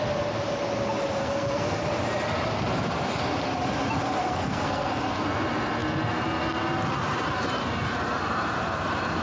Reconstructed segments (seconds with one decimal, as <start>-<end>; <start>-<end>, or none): 1.2-1.8; 4.2-5.0